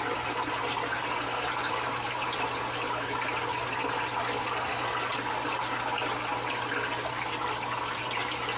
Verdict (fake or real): real